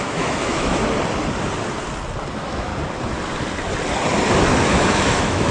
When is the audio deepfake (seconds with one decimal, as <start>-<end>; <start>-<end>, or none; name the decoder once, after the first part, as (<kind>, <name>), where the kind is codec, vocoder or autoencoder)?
0.0-0.8 (autoencoder, DAC-VAE); 2.3-2.7; 4.5-5.5